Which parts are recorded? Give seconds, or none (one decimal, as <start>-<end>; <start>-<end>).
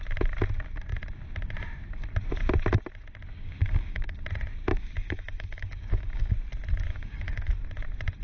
0.0-3.3; 4.2-4.7; 6.3-6.9; 7.5-8.2